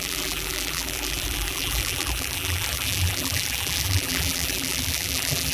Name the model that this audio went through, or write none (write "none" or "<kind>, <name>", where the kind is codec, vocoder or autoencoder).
vocoder, BigVGAN v2